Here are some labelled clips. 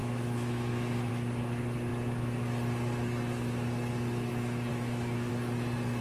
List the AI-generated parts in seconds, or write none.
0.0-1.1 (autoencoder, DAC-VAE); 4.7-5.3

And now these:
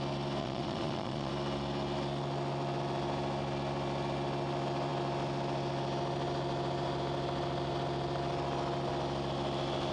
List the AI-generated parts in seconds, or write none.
0.4-1.3 (vocoder, Vocos)

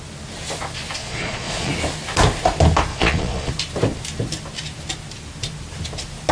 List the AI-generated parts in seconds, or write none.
1.0-1.7 (vocoder, Vocos); 2.9-3.5

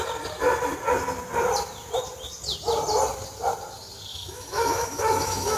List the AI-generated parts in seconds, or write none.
4.1-5.6 (autoencoder, DAC-VAE)

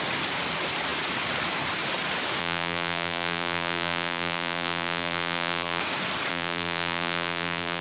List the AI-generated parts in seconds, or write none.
2.4-5.8 (vocoder, BigVGAN v2); 6.3-7.8

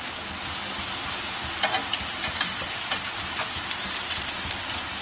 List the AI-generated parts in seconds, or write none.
1.8-4.3 (vocoder, BigVGAN v2)

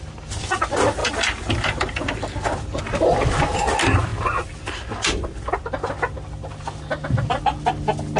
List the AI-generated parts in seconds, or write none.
1.0-2.8 (vocoder, BigVGAN v2)

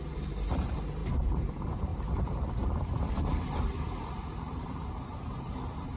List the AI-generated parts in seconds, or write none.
1.9-4.4 (vocoder, BigVGAN v2)